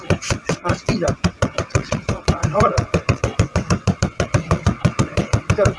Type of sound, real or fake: fake